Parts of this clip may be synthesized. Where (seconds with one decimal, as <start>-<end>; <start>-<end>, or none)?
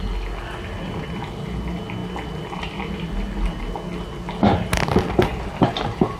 none